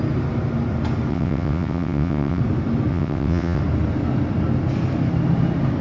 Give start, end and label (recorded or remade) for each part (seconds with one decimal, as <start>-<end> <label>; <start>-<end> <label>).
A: 0.0-1.1 recorded; 1.1-2.4 remade; 2.4-2.9 recorded; 2.9-3.6 remade; 3.6-5.8 recorded